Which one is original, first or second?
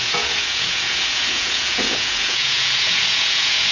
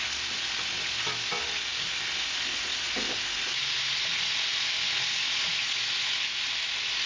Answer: second